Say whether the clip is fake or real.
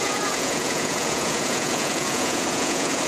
fake